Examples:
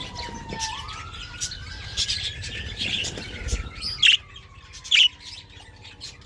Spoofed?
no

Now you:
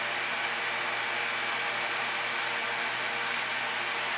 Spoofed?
no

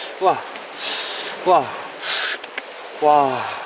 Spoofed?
no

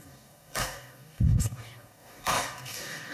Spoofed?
yes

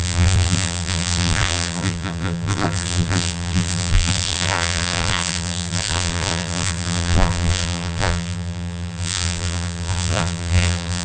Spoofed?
yes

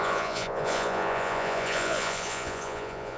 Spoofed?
yes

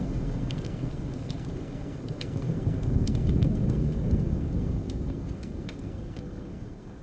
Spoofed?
yes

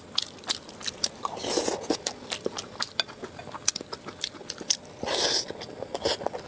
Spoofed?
no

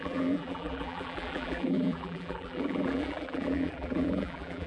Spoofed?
yes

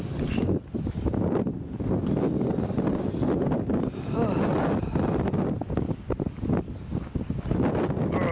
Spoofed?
no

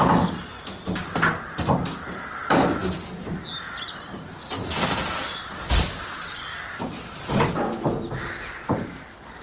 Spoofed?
no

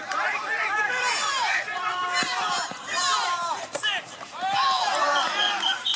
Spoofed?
yes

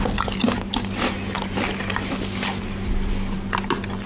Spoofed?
no